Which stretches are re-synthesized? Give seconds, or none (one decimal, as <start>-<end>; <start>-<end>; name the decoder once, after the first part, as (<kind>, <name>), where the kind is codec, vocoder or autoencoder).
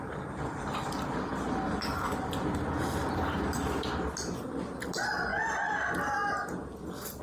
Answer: none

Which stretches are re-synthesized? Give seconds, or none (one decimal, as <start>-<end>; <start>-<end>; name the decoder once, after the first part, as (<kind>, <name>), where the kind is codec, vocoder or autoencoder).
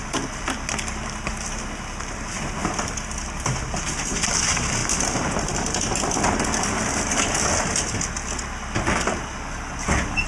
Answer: none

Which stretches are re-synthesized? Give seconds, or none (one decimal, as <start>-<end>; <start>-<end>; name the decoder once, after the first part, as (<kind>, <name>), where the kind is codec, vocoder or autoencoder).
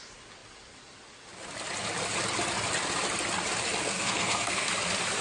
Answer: 3.8-4.7 (codec, SNAC)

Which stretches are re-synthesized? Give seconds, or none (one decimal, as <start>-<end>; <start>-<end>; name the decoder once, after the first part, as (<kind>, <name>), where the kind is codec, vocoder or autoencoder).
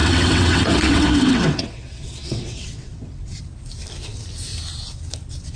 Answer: 0.0-3.4 (vocoder, WaveNeXt)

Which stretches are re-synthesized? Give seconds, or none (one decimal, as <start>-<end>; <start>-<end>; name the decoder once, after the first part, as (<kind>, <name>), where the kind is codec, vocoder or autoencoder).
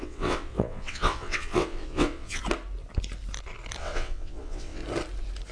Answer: 0.0-2.4 (vocoder, WaveNeXt); 3.8-4.8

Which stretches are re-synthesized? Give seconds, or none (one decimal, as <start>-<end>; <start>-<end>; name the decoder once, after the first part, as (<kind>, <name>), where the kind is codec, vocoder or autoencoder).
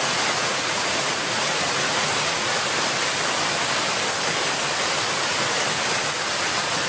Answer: 0.0-2.7 (vocoder, Vocos); 6.5-6.9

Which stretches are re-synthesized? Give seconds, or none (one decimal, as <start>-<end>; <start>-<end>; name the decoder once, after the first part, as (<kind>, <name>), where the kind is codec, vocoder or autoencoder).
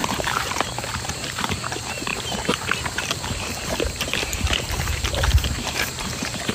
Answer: 0.0-6.5 (vocoder, BigVGAN v2)